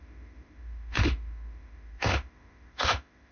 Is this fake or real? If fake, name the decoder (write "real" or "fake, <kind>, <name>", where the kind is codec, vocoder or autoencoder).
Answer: fake, autoencoder, DAC-VAE